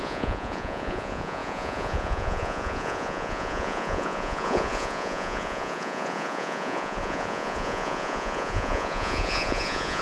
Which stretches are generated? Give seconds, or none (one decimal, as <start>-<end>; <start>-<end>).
0.0-10.0